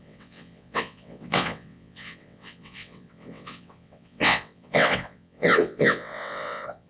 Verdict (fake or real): fake